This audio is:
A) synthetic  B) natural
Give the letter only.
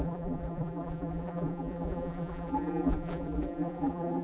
A